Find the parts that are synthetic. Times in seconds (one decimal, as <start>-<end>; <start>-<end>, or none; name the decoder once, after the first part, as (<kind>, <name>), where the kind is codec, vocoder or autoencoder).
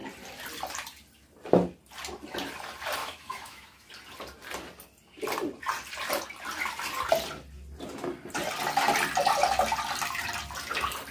3.0-3.9 (autoencoder, DAC-VAE)